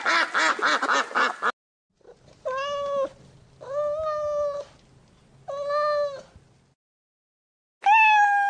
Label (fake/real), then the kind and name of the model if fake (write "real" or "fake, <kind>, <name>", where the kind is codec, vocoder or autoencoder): real